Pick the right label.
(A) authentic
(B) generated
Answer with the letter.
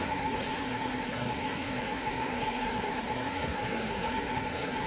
B